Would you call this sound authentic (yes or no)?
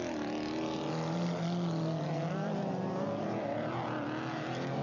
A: yes